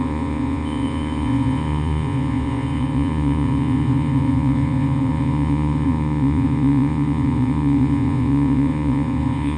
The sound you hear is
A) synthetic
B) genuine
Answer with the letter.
A